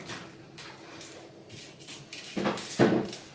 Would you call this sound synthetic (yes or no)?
no